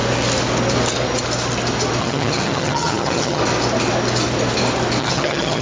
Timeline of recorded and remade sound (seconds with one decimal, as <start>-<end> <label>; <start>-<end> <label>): 0.0-2.0 recorded; 2.0-3.4 remade; 3.4-5.0 recorded; 5.0-5.6 remade